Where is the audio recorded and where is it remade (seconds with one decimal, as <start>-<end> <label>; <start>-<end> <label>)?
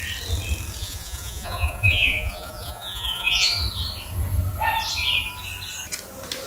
0.0-0.8 recorded; 0.8-3.5 remade; 3.5-6.5 recorded